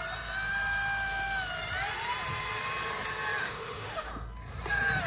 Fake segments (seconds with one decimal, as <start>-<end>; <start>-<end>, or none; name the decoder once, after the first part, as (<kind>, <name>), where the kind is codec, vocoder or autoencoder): 3.4-4.1 (autoencoder, DAC-VAE)